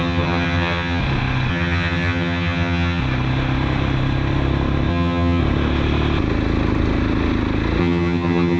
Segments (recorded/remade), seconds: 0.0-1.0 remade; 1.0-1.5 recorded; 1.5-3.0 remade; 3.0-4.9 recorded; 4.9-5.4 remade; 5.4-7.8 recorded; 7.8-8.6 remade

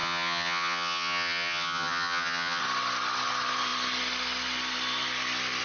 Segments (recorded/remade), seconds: 0.0-2.6 remade; 2.6-5.6 recorded

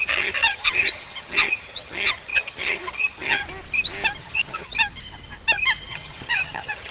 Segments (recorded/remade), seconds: 0.0-3.4 remade; 3.4-4.2 recorded; 4.2-4.7 remade; 4.7-5.9 recorded; 5.9-6.9 remade

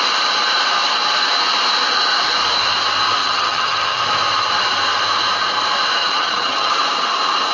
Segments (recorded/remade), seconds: 0.0-3.2 recorded; 3.2-4.0 remade; 4.0-6.0 recorded; 6.0-6.7 remade; 6.7-7.5 recorded

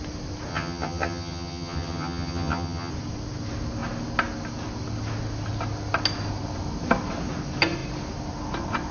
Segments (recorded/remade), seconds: 0.0-0.5 recorded; 0.5-2.9 remade; 2.9-8.9 recorded

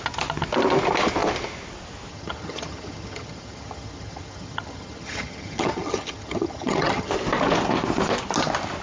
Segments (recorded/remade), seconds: 0.0-2.1 recorded; 2.1-7.1 remade; 7.1-8.8 recorded

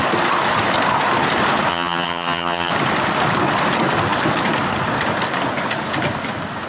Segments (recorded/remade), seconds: 0.0-1.7 recorded; 1.7-2.7 remade; 2.7-6.7 recorded

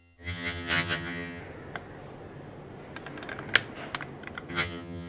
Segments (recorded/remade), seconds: 0.0-1.4 remade; 1.4-4.5 recorded; 4.5-5.1 remade